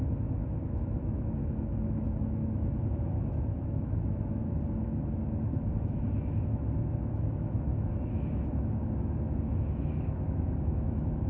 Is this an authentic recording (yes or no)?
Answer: no